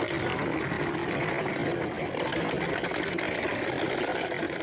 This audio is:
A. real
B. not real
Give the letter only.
A